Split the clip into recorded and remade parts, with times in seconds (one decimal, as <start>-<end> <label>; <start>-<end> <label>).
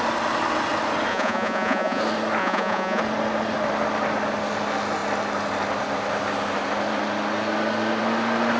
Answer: 0.0-1.1 recorded; 1.1-2.0 remade; 2.0-2.4 recorded; 2.4-3.0 remade; 3.0-8.6 recorded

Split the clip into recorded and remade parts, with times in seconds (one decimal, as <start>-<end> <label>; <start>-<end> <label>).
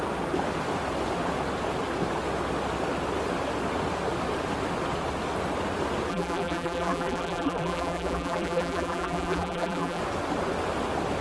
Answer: 0.0-6.1 recorded; 6.1-10.0 remade; 10.0-11.2 recorded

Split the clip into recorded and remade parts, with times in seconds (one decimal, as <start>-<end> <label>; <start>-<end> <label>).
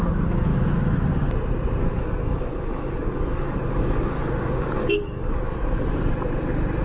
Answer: 0.0-1.8 recorded; 1.8-5.3 remade; 5.3-6.8 recorded